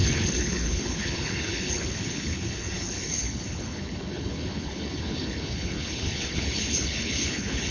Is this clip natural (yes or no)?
no